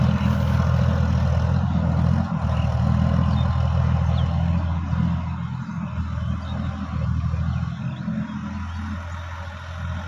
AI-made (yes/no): no